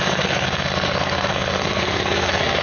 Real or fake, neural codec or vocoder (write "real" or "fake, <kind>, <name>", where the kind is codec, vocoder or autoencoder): fake, codec, SNAC